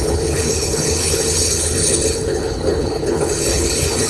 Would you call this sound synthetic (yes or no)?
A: yes